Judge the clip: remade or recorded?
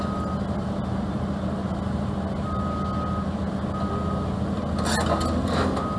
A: recorded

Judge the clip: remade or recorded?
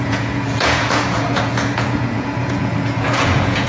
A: remade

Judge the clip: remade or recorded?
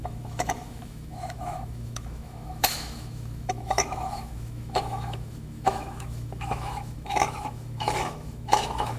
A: remade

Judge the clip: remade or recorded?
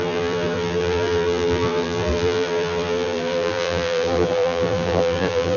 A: remade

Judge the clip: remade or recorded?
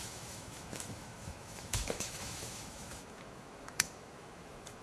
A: remade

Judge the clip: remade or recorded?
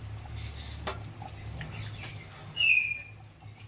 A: recorded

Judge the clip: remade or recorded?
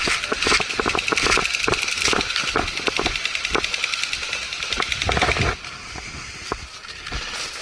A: recorded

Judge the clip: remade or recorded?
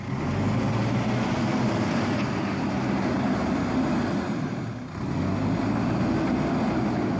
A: recorded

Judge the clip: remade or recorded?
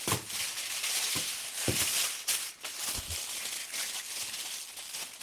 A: recorded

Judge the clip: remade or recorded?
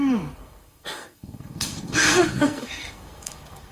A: remade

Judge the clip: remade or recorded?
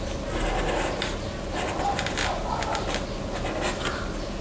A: recorded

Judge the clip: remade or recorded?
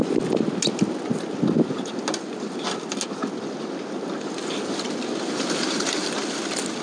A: recorded